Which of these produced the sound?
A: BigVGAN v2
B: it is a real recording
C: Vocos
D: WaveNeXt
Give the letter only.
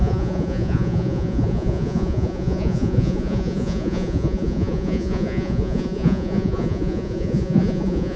C